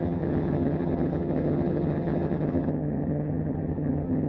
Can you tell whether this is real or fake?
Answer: fake